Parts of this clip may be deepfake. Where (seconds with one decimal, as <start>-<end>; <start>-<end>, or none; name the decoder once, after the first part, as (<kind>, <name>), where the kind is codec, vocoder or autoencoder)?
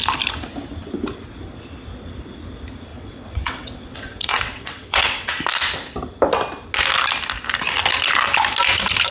2.9-5.3 (vocoder, WaveNeXt)